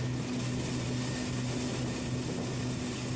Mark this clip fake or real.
real